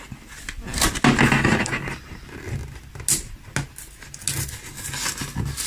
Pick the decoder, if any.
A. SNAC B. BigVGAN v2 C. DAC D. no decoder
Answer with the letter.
D